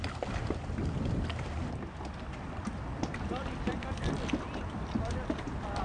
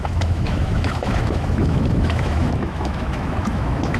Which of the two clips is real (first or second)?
first